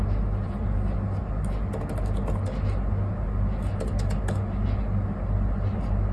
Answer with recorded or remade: recorded